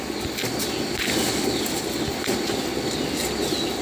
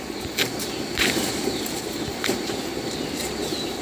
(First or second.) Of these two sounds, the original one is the first